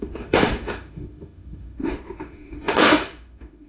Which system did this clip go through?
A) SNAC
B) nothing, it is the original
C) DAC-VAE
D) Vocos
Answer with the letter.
C